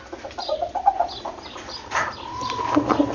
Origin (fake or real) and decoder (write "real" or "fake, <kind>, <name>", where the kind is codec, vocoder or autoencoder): real